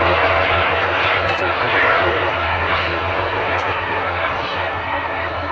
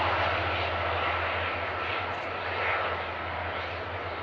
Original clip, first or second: second